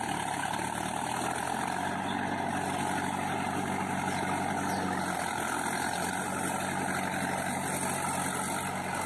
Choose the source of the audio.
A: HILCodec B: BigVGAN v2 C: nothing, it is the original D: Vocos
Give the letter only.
C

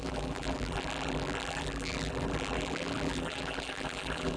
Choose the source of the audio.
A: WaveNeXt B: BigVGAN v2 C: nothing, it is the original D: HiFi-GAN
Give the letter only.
B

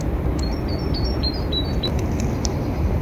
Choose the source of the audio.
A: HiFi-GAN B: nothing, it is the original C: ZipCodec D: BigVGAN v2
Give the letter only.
D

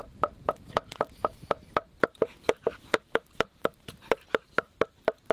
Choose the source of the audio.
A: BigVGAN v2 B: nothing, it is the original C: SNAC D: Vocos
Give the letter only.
A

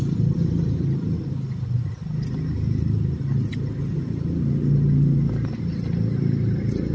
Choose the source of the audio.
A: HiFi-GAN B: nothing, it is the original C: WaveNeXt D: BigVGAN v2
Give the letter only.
B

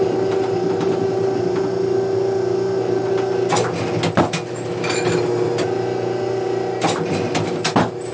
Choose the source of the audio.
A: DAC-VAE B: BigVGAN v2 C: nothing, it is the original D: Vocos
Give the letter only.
C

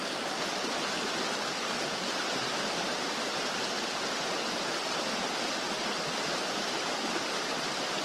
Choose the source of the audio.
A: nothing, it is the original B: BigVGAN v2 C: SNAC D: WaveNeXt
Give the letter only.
A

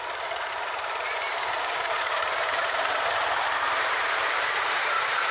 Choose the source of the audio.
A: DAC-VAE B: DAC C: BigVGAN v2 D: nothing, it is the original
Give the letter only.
C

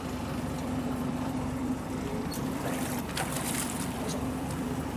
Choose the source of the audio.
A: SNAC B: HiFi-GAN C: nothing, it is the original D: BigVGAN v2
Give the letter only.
D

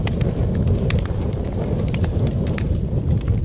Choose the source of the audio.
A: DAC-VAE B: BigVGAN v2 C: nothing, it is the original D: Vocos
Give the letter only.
B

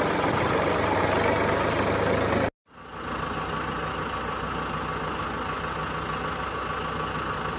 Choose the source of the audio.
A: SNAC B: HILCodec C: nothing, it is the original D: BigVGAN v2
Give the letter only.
C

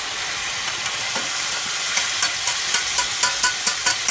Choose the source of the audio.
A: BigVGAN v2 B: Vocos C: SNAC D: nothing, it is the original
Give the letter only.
A